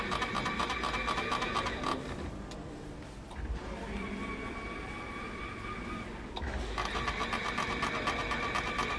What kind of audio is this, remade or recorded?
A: recorded